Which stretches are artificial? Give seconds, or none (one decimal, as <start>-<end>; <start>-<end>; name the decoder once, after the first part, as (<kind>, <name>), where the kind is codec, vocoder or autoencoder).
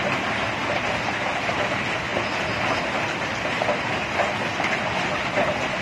none